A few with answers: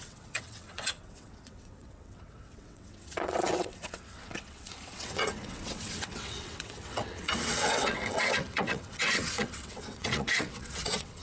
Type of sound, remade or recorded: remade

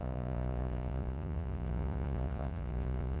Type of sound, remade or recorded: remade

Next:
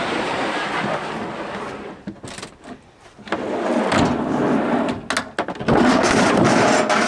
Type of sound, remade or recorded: recorded